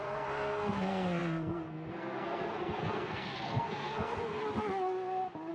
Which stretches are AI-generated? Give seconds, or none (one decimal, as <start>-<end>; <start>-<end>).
0.0-4.4